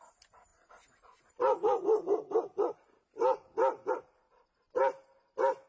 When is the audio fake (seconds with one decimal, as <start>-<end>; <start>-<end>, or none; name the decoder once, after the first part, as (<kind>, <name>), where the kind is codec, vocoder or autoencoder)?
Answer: none